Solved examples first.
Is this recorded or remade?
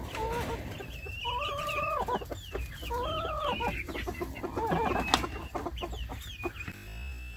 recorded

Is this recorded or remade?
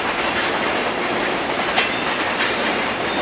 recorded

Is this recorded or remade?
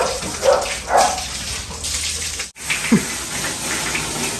recorded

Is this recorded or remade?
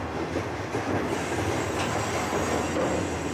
recorded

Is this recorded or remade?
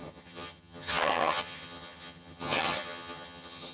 remade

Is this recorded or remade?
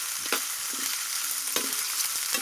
recorded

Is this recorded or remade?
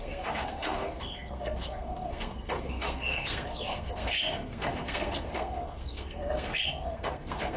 remade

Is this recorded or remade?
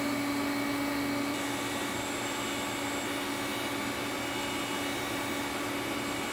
recorded